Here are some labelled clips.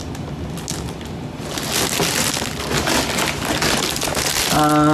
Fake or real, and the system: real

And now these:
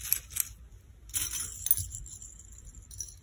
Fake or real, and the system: real